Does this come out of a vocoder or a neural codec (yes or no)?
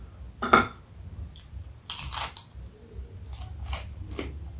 no